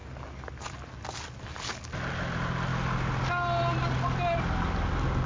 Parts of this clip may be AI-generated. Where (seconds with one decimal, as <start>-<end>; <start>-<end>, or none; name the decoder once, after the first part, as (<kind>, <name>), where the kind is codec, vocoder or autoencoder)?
none